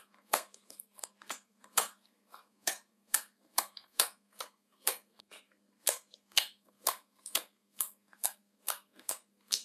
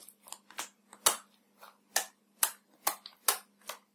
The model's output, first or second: first